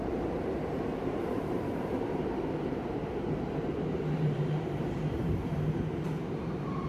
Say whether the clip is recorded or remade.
remade